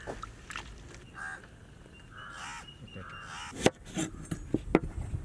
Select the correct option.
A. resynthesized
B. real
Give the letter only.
B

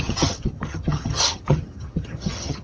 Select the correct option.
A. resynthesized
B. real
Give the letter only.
A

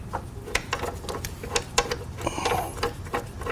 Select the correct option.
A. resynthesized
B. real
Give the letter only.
B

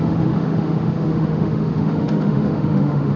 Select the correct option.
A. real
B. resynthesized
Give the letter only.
B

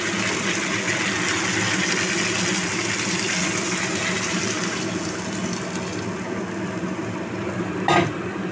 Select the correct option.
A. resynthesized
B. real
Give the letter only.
B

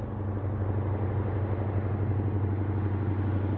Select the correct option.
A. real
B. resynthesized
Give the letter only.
A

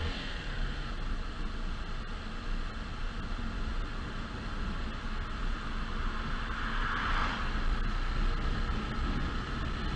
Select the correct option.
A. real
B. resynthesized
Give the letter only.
A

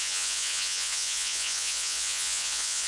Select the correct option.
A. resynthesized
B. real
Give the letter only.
A